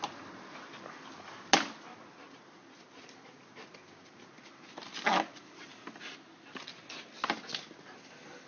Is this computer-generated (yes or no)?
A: no